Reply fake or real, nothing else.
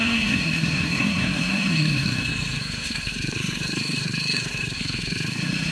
fake